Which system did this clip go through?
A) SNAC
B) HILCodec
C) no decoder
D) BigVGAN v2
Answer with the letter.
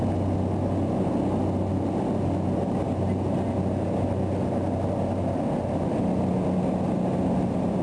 C